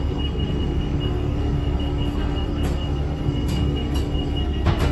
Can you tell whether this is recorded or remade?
remade